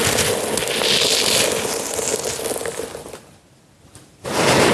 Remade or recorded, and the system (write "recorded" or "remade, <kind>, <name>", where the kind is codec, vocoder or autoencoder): recorded